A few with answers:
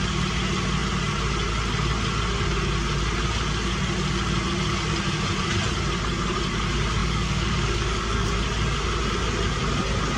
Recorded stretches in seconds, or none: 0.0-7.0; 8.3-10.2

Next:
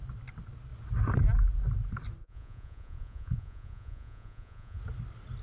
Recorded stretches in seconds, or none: 0.0-2.2; 4.8-5.4

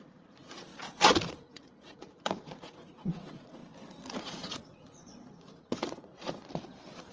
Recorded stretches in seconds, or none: 0.7-1.3; 3.6-4.2; 6.4-7.1